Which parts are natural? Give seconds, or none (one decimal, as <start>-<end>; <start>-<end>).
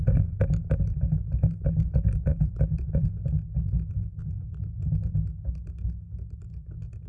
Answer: 0.0-7.1